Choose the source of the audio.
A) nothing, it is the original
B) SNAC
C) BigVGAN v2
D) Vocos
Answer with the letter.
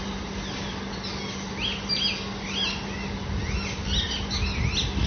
A